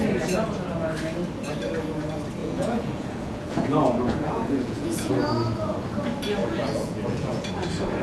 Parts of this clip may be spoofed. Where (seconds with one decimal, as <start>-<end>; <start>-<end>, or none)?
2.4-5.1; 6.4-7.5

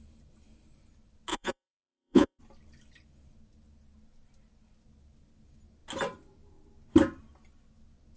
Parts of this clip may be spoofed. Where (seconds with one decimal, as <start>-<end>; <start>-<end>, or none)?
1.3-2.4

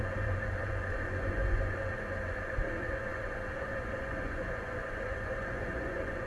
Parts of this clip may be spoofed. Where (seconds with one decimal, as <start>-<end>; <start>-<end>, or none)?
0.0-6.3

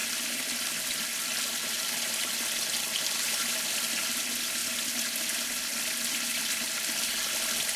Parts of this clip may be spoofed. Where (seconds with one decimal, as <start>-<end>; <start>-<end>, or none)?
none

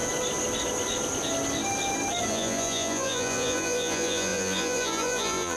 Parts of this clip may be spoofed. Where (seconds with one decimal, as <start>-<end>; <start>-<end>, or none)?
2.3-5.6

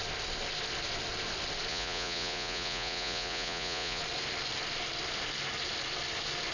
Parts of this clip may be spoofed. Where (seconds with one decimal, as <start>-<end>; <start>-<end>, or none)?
1.7-4.0

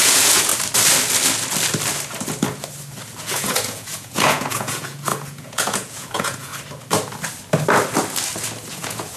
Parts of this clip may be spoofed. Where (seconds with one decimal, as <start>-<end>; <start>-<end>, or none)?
0.0-0.5; 3.2-6.5; 8.7-9.2

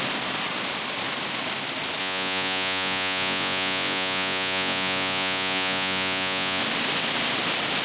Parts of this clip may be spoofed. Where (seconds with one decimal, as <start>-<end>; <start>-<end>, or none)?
2.0-6.6